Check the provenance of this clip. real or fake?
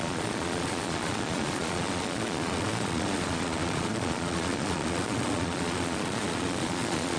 fake